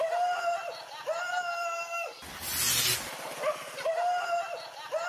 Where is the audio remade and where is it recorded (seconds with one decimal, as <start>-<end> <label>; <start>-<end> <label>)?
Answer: 0.0-5.1 recorded